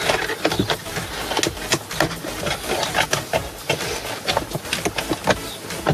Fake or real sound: real